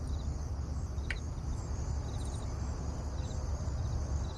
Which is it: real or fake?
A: real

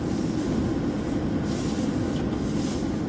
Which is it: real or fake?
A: real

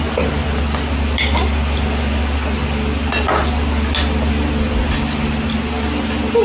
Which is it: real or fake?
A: real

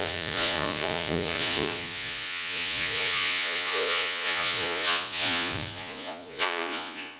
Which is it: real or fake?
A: fake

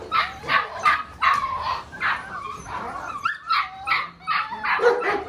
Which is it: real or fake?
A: real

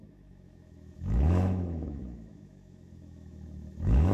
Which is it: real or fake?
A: fake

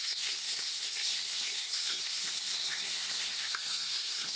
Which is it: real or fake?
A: fake